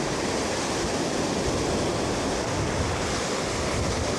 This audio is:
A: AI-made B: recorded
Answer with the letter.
B